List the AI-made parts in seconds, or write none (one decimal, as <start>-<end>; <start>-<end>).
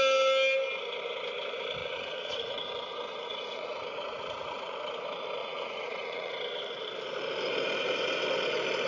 1.8-2.7; 3.2-4.8; 5.4-6.3